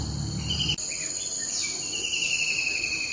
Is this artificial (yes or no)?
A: no